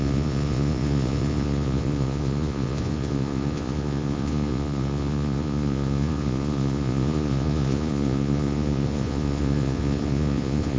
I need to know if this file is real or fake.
fake